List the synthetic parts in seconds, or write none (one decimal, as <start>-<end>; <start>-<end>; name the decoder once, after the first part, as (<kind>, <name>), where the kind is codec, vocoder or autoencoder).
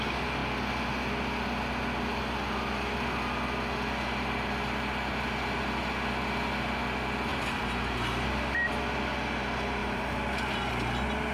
7.3-8.7 (vocoder, BigVGAN v2); 9.8-10.7